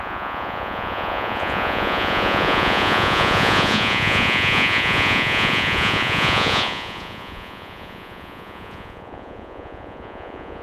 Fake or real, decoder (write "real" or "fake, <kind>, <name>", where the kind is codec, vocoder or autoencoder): fake, vocoder, Vocos